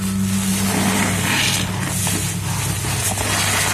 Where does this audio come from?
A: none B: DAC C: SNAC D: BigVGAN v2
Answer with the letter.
A